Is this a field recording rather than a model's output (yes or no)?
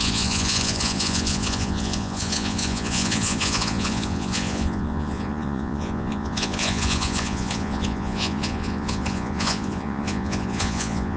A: no